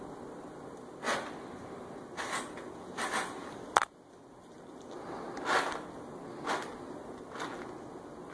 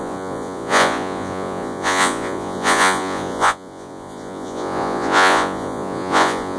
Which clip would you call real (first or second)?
first